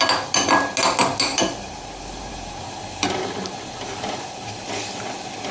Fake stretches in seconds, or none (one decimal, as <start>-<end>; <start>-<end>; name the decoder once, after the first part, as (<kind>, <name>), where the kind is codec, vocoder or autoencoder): 1.3-4.6 (vocoder, BigVGAN v2)